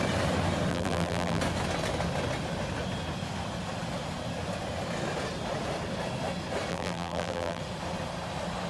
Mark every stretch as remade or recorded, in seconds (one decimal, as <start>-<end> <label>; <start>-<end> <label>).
0.0-0.7 recorded; 0.7-1.4 remade; 1.4-6.7 recorded; 6.7-7.6 remade; 7.6-8.7 recorded